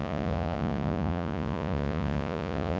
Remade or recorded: remade